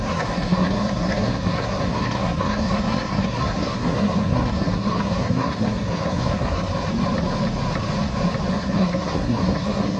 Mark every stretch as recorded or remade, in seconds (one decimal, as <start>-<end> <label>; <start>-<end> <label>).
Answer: 0.0-6.7 remade; 6.7-8.5 recorded; 8.5-10.0 remade